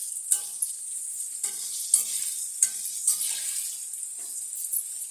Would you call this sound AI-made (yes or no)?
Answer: no